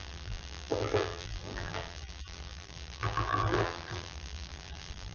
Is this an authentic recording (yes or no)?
no